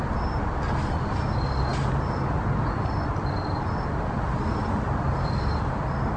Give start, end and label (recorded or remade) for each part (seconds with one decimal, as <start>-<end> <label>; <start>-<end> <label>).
0.0-6.2 recorded